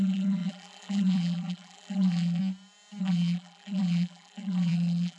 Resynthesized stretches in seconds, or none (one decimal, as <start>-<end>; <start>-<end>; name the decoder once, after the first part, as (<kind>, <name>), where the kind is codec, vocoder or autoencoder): 0.0-2.4 (vocoder, BigVGAN v2); 3.0-5.2